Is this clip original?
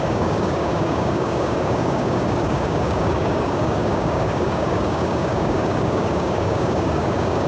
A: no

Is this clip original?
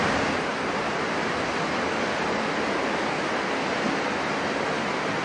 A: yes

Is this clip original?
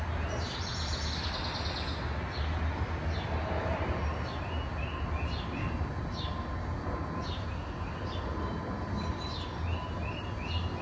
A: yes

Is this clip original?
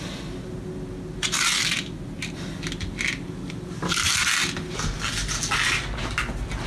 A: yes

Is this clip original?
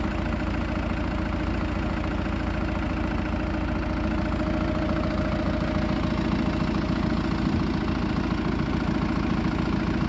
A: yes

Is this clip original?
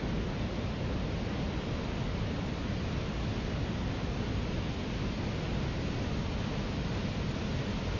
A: yes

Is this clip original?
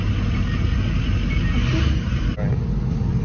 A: yes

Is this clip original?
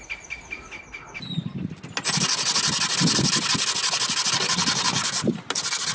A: yes